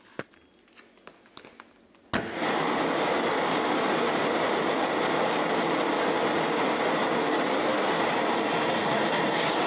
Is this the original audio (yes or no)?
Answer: yes